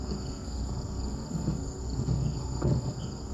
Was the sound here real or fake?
fake